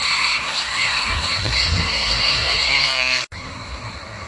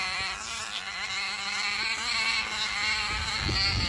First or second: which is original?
second